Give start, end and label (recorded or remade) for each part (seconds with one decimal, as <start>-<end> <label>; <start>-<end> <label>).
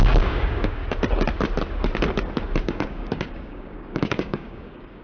0.0-0.8 remade; 0.8-2.6 recorded; 2.6-5.0 remade